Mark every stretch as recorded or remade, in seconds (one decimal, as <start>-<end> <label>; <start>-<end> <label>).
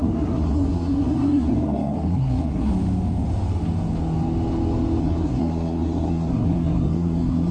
0.0-2.7 remade; 2.7-5.0 recorded; 5.0-7.5 remade